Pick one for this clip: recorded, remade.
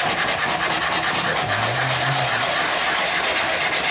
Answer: recorded